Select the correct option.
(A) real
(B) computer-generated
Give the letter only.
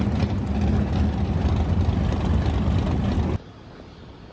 A